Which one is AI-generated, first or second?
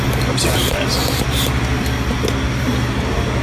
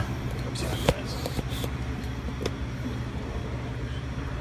second